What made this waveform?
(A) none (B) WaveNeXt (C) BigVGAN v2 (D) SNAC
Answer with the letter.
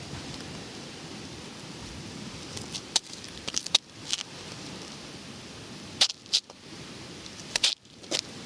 C